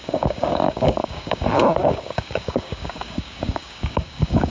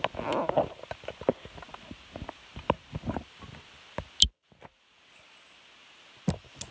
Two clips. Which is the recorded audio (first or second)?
second